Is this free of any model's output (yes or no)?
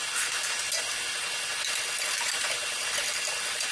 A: yes